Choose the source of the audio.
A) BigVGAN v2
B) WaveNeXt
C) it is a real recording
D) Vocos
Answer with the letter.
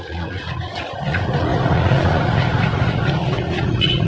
D